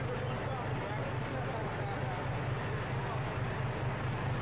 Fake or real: real